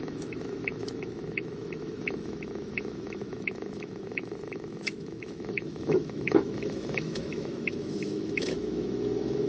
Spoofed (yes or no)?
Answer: yes